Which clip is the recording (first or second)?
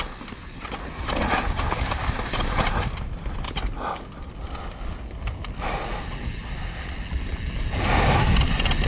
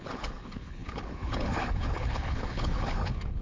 first